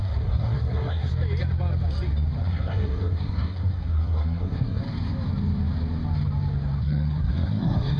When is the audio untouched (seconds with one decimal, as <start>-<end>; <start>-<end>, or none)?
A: 1.1-2.4; 4.8-6.8